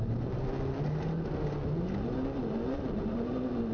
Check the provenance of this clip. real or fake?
real